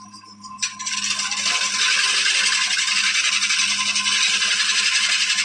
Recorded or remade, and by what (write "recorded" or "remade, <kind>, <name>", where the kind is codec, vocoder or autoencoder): recorded